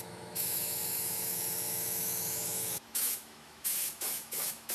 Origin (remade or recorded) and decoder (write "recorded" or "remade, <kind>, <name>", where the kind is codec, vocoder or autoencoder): remade, autoencoder, DAC-VAE